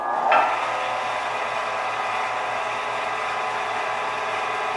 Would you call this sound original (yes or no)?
yes